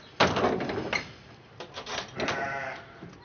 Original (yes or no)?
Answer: yes